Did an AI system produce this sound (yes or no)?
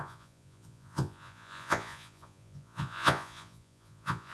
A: yes